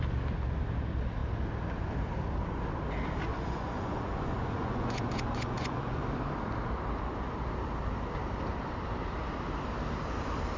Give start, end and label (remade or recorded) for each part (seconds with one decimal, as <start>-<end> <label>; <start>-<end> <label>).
0.0-3.3 recorded; 3.3-6.0 remade; 6.0-10.6 recorded